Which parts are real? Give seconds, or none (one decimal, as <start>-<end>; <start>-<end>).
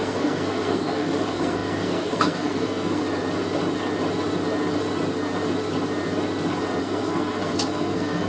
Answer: 3.0-6.8